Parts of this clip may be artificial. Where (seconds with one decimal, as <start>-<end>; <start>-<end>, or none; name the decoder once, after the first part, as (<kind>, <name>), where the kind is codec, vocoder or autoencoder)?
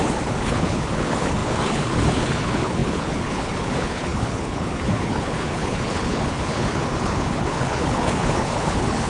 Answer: 0.0-9.1 (codec, HILCodec)